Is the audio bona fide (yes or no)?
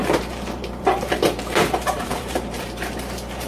no